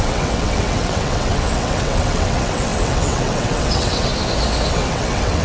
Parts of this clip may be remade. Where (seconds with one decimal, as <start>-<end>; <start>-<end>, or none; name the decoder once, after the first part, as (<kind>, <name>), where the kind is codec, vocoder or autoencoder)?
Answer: 0.0-4.1 (vocoder, WaveNeXt); 4.7-5.4